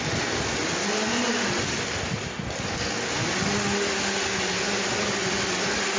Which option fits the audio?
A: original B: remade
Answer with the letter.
A